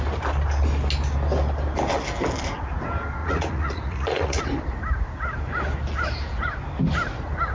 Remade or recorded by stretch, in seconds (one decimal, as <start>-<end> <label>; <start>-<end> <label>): 0.0-3.2 recorded; 3.2-4.4 remade; 4.4-7.5 recorded